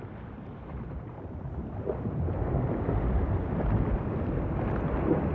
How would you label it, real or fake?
real